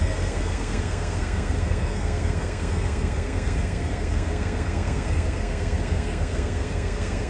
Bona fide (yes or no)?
no